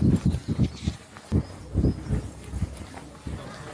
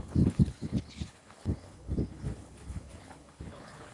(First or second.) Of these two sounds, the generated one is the second